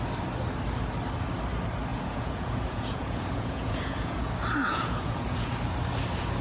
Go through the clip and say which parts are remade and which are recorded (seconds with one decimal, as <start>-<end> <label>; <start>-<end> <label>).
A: 0.0-1.9 recorded; 1.9-4.3 remade; 4.3-4.7 recorded; 4.7-5.5 remade; 5.5-6.4 recorded